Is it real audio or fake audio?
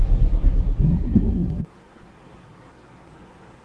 fake